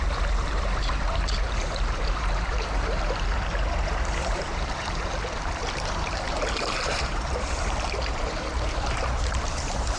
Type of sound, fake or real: fake